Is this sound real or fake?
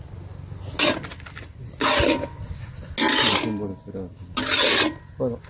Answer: real